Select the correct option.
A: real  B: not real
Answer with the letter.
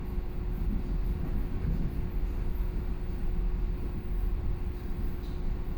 A